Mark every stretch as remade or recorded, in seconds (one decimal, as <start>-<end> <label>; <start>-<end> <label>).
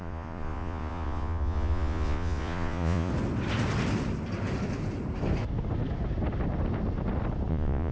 0.0-3.1 remade; 3.1-7.5 recorded; 7.5-7.9 remade